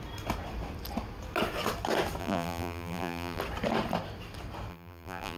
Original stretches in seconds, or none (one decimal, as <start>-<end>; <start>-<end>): 0.0-2.2; 3.4-4.7